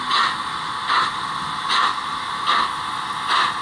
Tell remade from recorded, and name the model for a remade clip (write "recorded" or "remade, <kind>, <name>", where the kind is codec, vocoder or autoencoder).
recorded